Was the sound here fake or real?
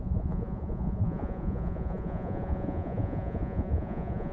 fake